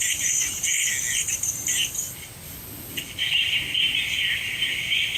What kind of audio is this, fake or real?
real